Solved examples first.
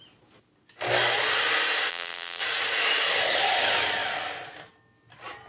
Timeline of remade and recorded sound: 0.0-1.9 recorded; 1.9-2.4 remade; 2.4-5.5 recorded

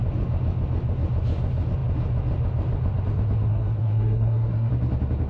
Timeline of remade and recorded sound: 0.0-3.5 recorded; 3.5-4.7 remade; 4.7-5.3 recorded

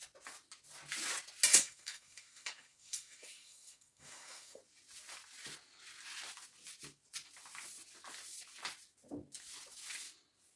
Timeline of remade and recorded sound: 0.0-1.5 recorded; 1.5-4.6 remade; 4.6-10.6 recorded

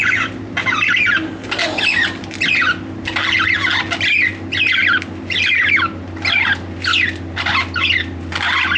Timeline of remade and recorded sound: 0.0-8.8 recorded

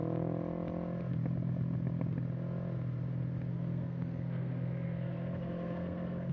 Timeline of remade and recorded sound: 0.0-3.5 recorded; 3.5-6.3 remade

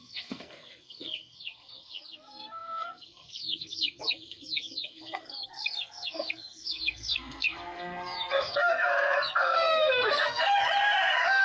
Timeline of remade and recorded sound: 0.0-10.6 remade; 10.6-11.4 recorded

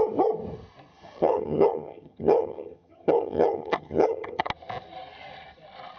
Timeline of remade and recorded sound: 0.0-0.9 recorded; 0.9-4.5 remade; 4.5-6.0 recorded

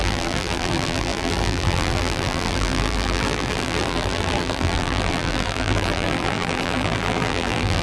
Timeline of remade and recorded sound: 0.0-7.8 remade